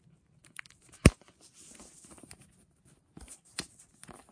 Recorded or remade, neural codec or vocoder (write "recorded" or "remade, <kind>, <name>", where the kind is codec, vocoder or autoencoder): recorded